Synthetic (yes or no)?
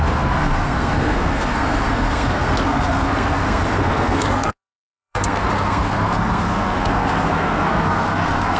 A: yes